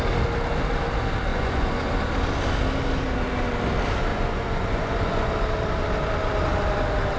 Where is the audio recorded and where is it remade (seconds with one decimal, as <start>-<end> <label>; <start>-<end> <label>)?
0.0-1.3 recorded; 1.3-1.9 remade; 1.9-4.1 recorded; 4.1-5.3 remade; 5.3-7.2 recorded